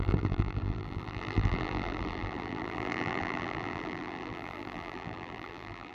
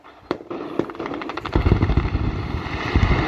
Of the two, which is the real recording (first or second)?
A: second